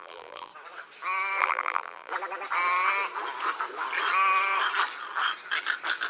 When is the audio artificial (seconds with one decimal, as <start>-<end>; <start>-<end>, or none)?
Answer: 0.0-0.5; 1.4-2.1